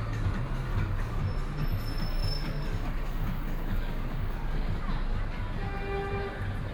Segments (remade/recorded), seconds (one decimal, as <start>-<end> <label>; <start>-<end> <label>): 0.0-0.7 recorded; 0.7-1.2 remade; 1.2-2.2 recorded; 2.2-4.8 remade; 4.8-6.7 recorded